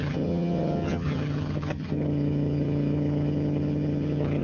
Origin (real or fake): fake